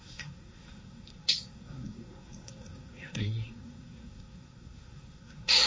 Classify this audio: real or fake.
fake